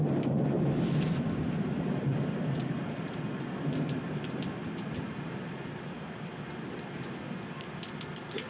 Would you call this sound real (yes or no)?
yes